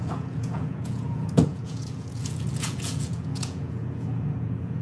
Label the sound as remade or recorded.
remade